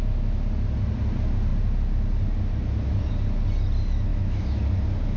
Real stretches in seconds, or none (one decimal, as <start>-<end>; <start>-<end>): 0.0-4.1; 4.6-5.2